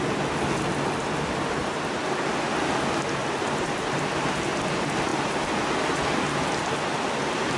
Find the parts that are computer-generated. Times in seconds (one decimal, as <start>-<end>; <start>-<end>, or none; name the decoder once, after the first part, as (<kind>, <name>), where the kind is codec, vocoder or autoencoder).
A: 3.2-4.4 (vocoder, BigVGAN v2); 5.1-5.6